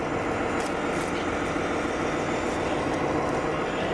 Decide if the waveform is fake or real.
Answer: real